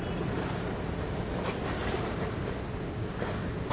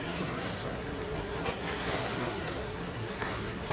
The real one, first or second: first